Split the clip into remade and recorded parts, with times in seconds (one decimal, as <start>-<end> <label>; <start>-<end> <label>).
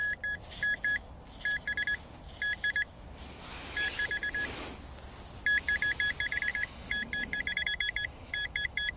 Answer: 0.0-6.5 recorded; 6.5-9.0 remade